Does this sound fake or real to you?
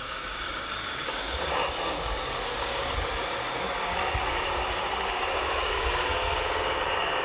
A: fake